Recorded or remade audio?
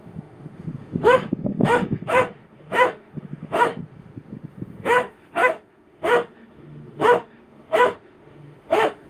remade